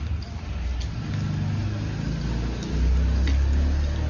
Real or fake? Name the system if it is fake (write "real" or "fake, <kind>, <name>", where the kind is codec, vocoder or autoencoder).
real